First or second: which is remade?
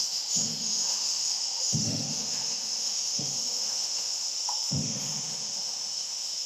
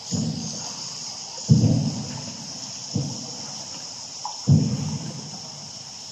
first